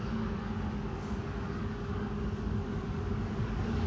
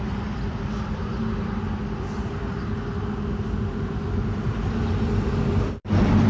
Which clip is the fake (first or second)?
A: first